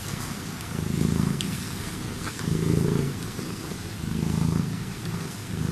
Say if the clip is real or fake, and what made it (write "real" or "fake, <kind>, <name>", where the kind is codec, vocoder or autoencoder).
fake, codec, SNAC